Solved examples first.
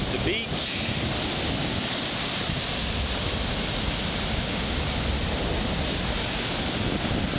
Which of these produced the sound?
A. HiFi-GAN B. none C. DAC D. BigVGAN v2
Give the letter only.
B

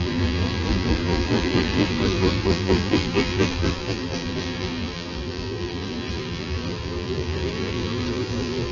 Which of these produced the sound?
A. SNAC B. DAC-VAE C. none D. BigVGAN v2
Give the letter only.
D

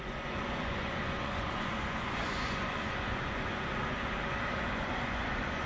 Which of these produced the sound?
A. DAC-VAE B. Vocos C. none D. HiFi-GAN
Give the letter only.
B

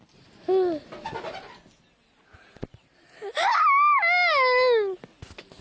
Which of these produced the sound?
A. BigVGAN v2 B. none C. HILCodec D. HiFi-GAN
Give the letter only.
B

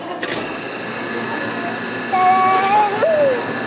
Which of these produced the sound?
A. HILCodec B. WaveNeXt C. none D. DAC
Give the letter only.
C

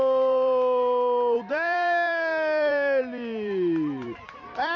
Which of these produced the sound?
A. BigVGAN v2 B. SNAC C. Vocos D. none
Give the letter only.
A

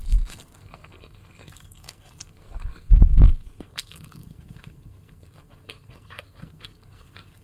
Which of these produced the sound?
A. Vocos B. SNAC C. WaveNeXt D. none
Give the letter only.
B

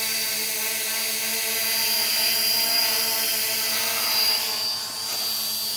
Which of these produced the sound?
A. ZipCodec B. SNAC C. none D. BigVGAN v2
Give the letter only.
C